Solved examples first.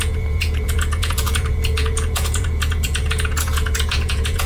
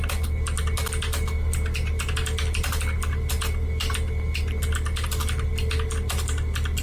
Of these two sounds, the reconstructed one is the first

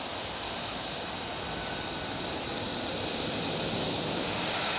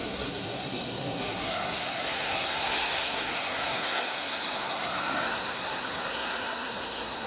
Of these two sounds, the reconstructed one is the second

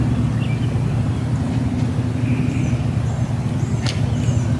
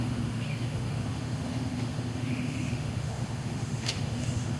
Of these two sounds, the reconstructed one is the second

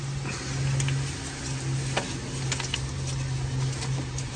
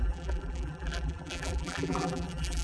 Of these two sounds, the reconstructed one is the second